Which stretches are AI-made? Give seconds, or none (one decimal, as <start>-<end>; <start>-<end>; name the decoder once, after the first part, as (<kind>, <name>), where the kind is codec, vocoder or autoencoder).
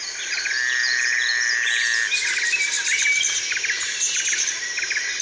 none